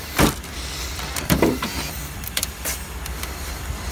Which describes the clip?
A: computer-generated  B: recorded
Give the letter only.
A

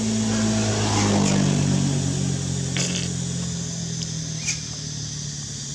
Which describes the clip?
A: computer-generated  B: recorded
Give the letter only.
B